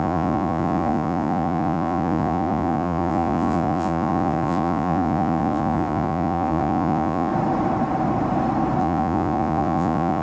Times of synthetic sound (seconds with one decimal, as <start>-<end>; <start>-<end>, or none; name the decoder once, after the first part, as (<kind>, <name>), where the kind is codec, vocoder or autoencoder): 0.0-7.3 (vocoder, Vocos); 8.8-10.2